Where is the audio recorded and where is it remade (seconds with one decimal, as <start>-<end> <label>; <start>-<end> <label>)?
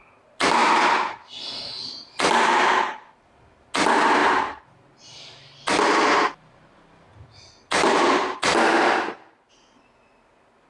0.0-10.7 recorded